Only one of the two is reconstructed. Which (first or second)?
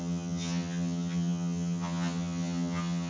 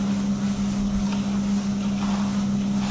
first